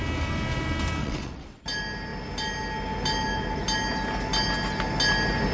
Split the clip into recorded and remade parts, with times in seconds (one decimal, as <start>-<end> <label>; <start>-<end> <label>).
0.0-1.0 recorded; 1.0-1.6 remade; 1.6-5.5 recorded